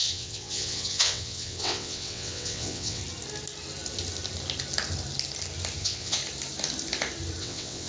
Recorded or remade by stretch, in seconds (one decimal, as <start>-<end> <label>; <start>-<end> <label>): 0.0-3.0 remade; 3.0-5.8 recorded; 5.8-6.2 remade; 6.2-7.4 recorded; 7.4-7.9 remade